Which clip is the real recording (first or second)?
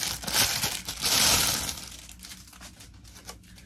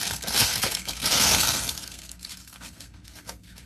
first